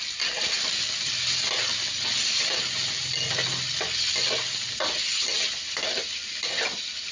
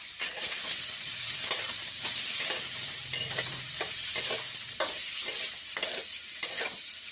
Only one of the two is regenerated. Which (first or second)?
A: second